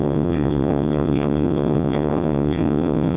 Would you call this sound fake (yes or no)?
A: yes